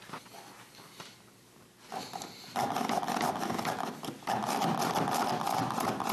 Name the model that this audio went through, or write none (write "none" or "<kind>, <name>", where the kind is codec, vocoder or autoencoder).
none